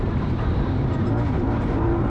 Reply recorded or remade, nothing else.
remade